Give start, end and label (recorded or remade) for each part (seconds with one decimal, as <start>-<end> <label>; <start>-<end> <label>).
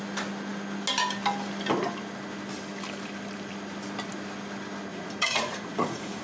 0.0-4.9 recorded; 4.9-6.2 remade